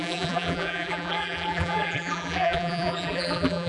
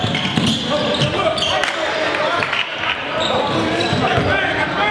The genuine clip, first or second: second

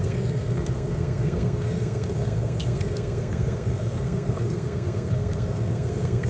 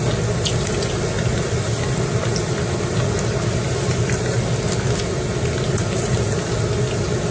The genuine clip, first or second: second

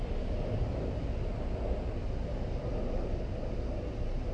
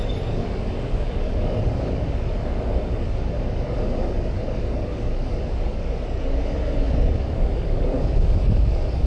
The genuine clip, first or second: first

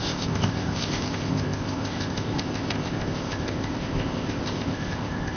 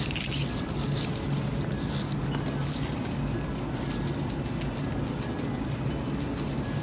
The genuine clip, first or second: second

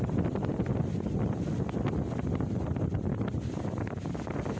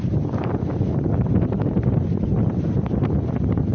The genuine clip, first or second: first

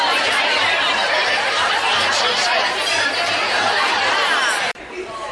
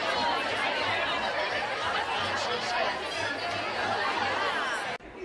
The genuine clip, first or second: second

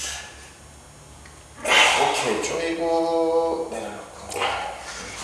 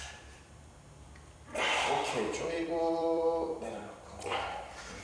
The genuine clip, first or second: first